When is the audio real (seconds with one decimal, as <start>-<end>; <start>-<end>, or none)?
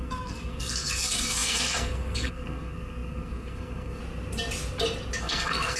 4.0-5.2